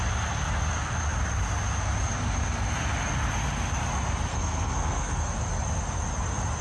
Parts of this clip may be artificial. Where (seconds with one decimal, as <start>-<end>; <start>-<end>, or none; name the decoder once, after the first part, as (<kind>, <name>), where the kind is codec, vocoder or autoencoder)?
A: 4.3-5.3 (codec, SNAC)